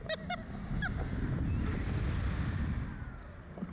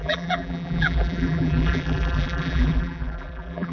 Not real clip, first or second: second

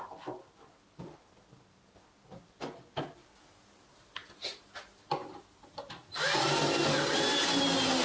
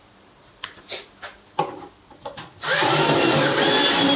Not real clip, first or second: second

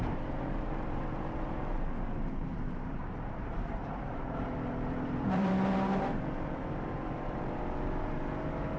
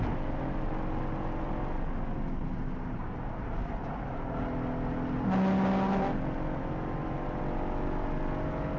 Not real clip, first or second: first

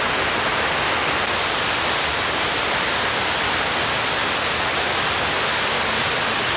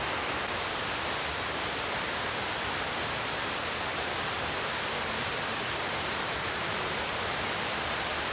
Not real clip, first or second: second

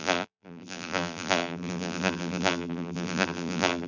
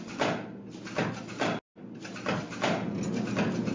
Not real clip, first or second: first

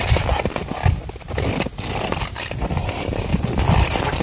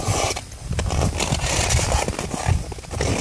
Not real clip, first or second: first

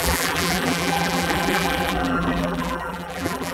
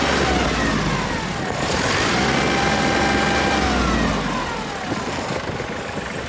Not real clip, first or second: first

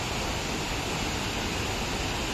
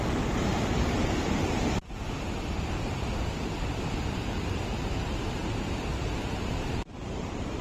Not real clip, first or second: second